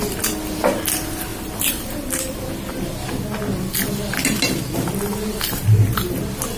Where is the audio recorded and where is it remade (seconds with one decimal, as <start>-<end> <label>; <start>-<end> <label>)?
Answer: 0.0-1.3 recorded; 1.3-2.5 remade; 2.5-6.6 recorded